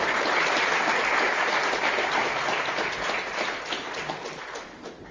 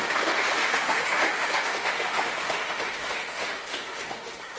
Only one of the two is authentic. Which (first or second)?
first